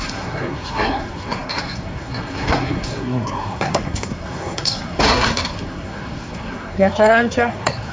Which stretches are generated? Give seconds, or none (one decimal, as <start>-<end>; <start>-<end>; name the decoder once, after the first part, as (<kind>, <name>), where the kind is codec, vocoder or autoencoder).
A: 0.0-7.9 (codec, SNAC)